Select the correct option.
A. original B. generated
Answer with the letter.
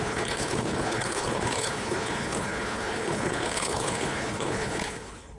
B